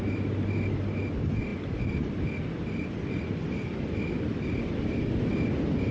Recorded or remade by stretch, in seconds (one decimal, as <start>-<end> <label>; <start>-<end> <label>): 0.0-5.9 recorded